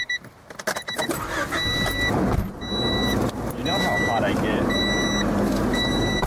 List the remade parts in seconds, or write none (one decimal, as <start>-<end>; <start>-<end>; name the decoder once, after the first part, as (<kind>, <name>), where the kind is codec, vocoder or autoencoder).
none